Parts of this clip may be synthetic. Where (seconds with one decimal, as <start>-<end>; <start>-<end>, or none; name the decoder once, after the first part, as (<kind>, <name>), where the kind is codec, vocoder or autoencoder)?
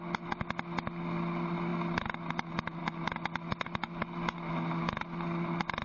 none